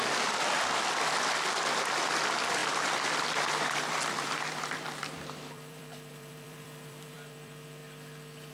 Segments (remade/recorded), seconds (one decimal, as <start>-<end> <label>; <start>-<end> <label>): 0.0-7.8 remade; 7.8-8.5 recorded